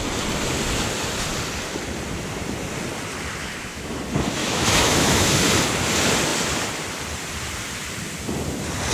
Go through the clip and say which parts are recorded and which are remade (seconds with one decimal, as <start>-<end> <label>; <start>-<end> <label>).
0.0-3.4 recorded; 3.4-4.0 remade; 4.0-4.4 recorded; 4.4-5.4 remade; 5.4-8.9 recorded